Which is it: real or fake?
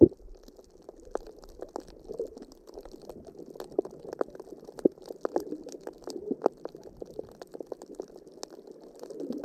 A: real